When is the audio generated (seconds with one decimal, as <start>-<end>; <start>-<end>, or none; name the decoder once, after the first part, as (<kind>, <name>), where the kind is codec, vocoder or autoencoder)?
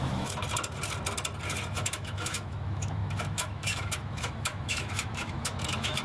0.0-0.4 (autoencoder, DAC-VAE); 1.7-6.0